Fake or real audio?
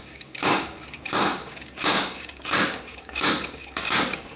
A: fake